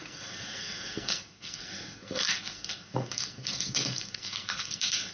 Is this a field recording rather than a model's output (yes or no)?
no